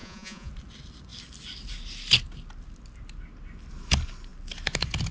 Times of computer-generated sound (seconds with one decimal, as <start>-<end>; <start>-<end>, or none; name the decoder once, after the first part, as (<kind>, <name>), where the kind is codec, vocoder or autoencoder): 0.0-0.5 (vocoder, Vocos)